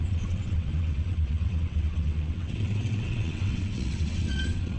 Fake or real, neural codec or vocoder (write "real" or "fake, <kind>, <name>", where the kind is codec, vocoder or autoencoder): fake, vocoder, WaveNeXt